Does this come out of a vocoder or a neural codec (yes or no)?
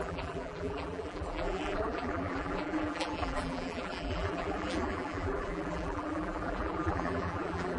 yes